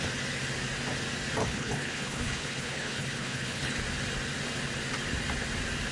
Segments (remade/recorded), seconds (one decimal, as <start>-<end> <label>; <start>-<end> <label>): 0.0-1.4 recorded; 1.4-3.8 remade; 3.8-5.9 recorded